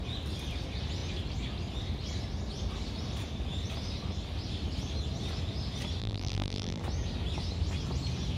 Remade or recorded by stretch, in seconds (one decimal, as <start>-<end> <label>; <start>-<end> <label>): 0.0-6.0 recorded; 6.0-6.8 remade; 6.8-8.4 recorded